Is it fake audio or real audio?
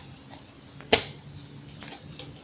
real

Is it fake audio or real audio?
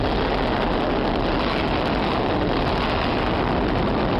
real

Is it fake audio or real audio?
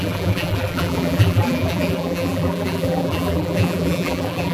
fake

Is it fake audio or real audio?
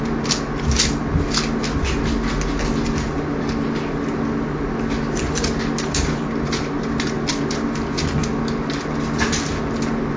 real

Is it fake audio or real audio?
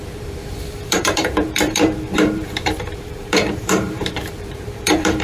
fake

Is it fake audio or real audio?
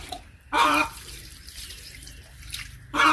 fake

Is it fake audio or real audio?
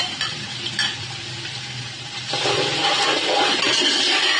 fake